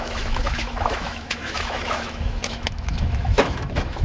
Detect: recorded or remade remade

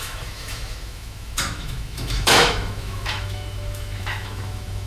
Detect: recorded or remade remade